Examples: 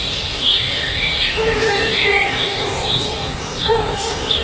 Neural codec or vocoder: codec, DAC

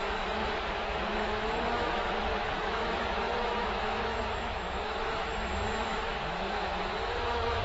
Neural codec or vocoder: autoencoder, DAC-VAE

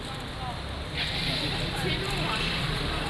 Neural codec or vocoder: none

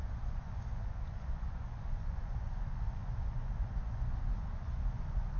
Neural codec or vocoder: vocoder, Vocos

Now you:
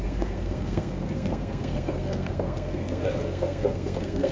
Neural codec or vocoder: codec, SNAC